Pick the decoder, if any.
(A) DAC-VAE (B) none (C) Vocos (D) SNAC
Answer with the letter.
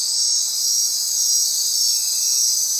B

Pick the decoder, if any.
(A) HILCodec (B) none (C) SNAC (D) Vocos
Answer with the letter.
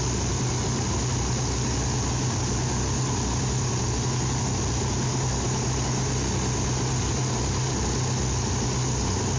B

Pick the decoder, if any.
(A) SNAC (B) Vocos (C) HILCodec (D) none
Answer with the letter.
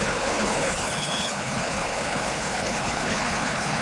C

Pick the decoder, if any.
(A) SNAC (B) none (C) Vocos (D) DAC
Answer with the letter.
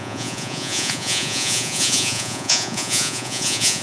C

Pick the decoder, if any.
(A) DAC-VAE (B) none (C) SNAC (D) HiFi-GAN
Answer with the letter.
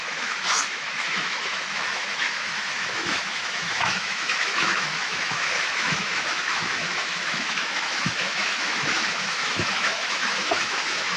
A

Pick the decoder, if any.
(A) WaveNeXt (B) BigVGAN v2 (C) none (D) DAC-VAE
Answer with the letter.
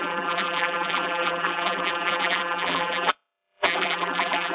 B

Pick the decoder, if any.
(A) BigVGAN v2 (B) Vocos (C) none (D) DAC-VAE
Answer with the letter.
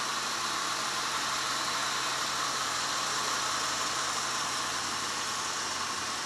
C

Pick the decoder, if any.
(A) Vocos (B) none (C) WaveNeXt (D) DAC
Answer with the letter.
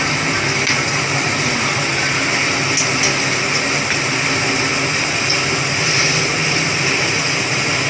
B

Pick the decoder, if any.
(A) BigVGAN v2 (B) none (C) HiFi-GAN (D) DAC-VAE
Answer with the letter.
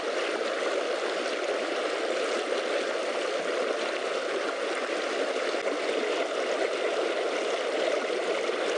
B